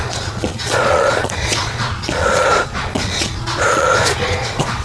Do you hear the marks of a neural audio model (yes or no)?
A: yes